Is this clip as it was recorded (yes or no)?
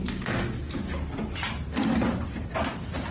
yes